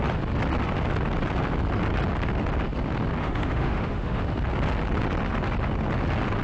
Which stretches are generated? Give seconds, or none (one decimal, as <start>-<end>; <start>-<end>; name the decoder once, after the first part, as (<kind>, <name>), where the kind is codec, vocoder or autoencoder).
3.2-4.2 (autoencoder, DAC-VAE)